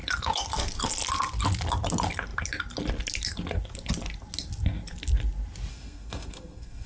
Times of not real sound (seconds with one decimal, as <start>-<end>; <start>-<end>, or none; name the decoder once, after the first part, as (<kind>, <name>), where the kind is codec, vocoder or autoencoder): 5.7-6.9 (codec, SNAC)